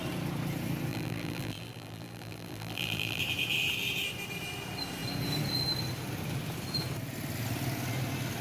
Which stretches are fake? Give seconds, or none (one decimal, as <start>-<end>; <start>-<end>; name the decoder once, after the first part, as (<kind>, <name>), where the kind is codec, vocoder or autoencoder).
0.9-3.2 (vocoder, BigVGAN v2)